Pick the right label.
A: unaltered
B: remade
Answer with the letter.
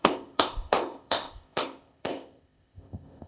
B